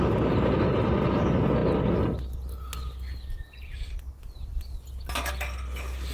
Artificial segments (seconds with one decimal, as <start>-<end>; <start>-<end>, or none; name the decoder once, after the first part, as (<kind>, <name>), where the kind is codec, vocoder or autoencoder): none